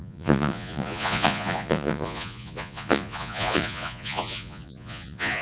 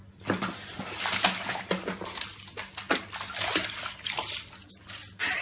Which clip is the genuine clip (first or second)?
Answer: second